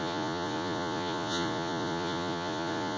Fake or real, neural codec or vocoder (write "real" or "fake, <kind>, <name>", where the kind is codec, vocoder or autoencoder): fake, vocoder, Vocos